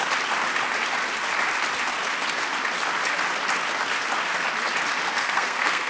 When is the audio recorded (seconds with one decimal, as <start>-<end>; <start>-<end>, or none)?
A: 0.0-5.1